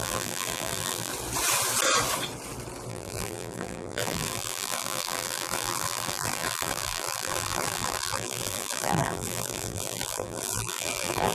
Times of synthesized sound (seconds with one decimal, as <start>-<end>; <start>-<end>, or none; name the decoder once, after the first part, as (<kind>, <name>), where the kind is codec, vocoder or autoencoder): 0.0-1.1 (vocoder, BigVGAN v2); 2.9-11.3

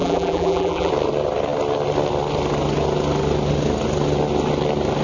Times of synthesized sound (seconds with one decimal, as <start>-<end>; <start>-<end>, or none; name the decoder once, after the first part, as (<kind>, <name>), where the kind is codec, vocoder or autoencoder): 0.0-0.9 (vocoder, BigVGAN v2)

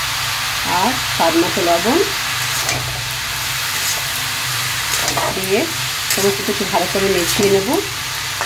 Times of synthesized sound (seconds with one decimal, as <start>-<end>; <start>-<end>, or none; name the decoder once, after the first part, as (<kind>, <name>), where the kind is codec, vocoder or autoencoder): 0.0-5.0 (vocoder, BigVGAN v2); 6.4-6.9; 7.4-8.5